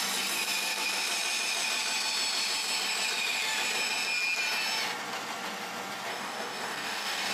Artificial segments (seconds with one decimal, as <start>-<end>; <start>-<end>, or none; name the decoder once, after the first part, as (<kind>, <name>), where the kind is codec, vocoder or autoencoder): 6.1-7.3 (codec, DAC)